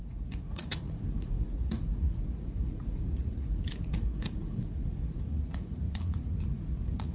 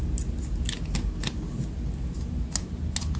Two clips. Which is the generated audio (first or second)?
first